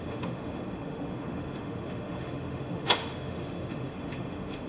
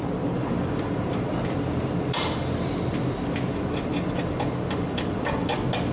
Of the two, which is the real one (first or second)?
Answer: second